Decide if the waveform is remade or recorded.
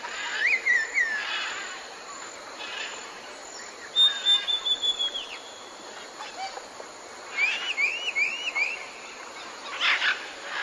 recorded